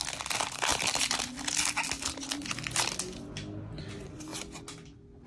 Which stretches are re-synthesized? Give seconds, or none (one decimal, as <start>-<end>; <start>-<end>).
none